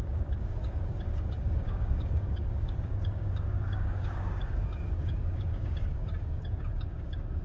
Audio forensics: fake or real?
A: fake